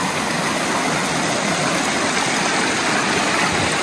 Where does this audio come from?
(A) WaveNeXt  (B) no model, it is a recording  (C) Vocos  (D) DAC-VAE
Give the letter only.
B